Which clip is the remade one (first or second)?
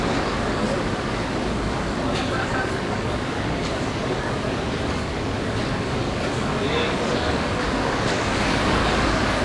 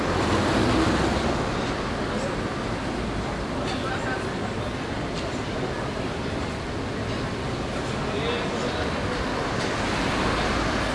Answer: first